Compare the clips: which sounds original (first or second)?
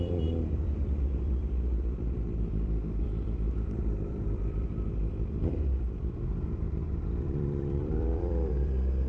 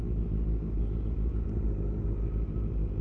second